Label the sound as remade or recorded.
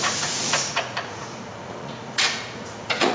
remade